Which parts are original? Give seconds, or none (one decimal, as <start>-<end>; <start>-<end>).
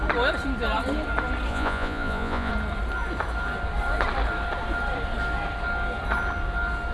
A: 0.0-1.5; 2.5-6.9